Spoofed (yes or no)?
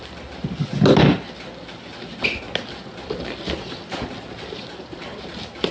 no